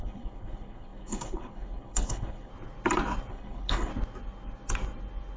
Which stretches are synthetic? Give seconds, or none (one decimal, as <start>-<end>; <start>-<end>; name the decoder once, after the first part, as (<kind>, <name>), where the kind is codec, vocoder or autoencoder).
0.0-2.5 (codec, HILCodec); 3.3-3.9